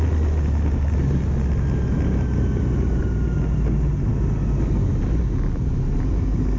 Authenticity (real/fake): real